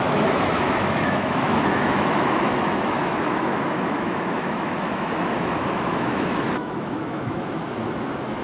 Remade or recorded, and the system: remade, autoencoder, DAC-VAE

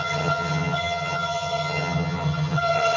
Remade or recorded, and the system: remade, vocoder, HiFi-GAN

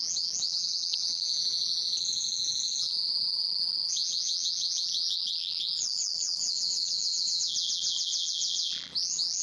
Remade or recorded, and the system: remade, vocoder, BigVGAN v2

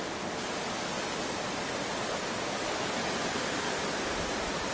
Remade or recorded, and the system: recorded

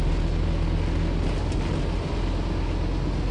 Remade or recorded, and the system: recorded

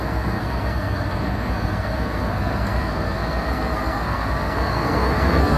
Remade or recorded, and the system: remade, codec, SNAC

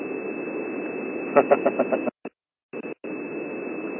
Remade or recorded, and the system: recorded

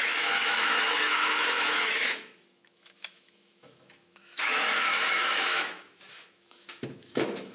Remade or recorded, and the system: remade, autoencoder, DAC-VAE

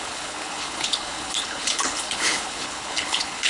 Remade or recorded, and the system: remade, codec, HILCodec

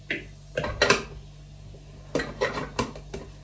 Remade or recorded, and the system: recorded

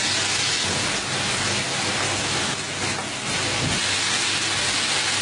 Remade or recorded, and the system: recorded